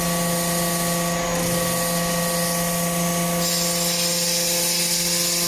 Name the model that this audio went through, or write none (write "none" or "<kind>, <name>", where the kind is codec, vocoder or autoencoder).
none